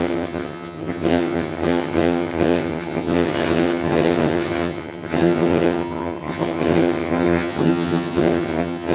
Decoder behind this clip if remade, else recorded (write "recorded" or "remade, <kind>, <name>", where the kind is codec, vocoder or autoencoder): remade, vocoder, HiFi-GAN